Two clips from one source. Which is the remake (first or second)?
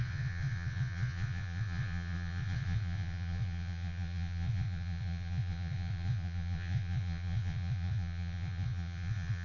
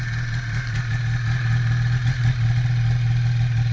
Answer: first